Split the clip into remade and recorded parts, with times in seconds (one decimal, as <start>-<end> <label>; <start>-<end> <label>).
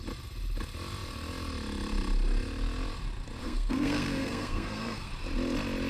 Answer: 0.0-3.4 recorded; 3.4-5.1 remade; 5.1-5.9 recorded